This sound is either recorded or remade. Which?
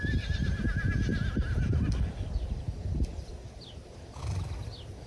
recorded